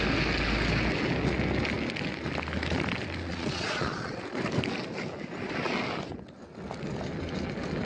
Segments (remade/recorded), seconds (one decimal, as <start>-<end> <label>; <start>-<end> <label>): 0.0-3.3 recorded; 3.3-4.2 remade; 4.2-7.9 recorded